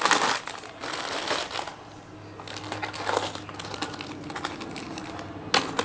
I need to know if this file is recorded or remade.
recorded